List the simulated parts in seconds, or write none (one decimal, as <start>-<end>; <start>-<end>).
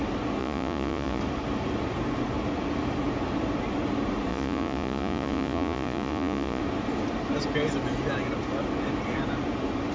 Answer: 0.4-1.2; 4.3-6.6